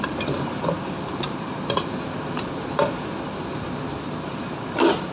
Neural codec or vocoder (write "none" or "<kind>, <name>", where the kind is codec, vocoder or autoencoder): vocoder, BigVGAN v2